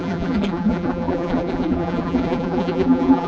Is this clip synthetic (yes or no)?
yes